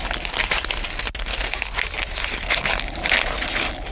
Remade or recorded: recorded